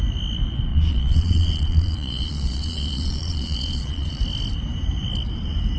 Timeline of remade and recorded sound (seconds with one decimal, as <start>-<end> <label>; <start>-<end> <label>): 0.0-0.7 recorded; 0.7-4.2 remade; 4.2-5.8 recorded